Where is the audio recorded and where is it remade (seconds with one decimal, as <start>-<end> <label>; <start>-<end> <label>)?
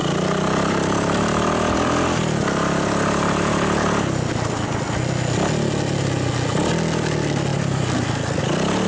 0.0-7.5 recorded; 7.5-8.4 remade; 8.4-8.9 recorded